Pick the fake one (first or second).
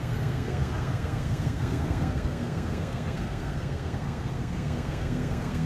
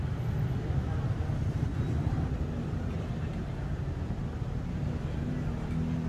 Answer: first